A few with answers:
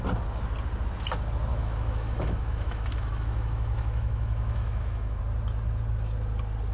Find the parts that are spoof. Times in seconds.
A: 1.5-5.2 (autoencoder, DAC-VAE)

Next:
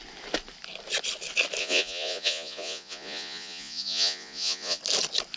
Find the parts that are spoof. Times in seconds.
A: 1.6-4.8 (vocoder, Vocos)

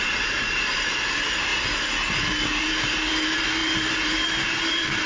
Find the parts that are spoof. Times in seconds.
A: 0.0-1.5 (vocoder, BigVGAN v2); 2.6-5.1

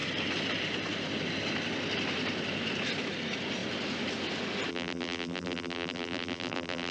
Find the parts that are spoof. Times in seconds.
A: 4.7-6.9 (vocoder, BigVGAN v2)

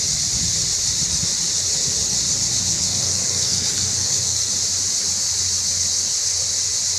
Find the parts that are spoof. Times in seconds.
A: 2.7-4.5 (codec, SNAC)

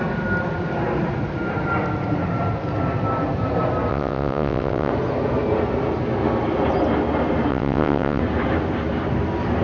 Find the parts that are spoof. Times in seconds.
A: 3.9-4.9 (vocoder, WaveNeXt); 7.5-8.2